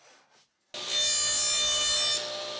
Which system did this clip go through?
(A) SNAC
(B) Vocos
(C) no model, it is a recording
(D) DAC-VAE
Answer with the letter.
C